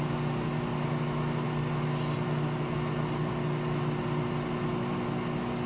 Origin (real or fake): real